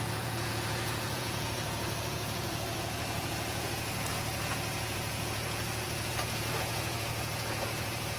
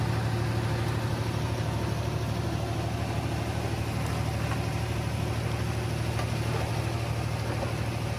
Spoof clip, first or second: first